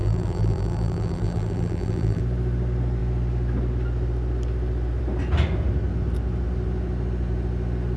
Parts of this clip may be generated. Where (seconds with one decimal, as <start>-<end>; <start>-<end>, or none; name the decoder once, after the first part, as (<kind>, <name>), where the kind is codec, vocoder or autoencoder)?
0.0-2.2 (vocoder, BigVGAN v2)